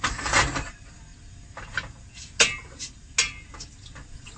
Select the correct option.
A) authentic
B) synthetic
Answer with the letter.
A